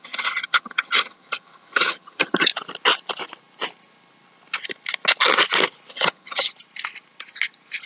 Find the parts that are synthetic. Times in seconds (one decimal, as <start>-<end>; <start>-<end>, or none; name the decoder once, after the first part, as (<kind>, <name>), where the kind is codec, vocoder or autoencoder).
0.0-2.5 (vocoder, HiFi-GAN); 5.9-6.5